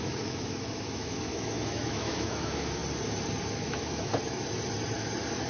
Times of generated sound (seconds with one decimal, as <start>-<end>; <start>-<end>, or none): 0.0-2.8; 3.6-4.1